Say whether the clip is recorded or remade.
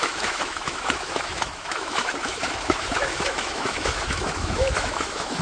remade